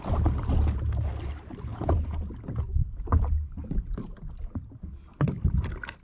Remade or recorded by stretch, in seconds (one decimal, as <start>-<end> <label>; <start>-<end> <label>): 0.0-1.7 recorded; 1.7-2.3 remade; 2.3-6.0 recorded